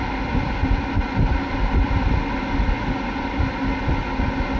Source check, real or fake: real